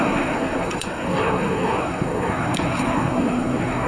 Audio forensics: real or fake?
fake